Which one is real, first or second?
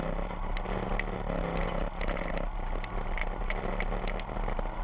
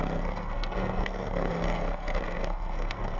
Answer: first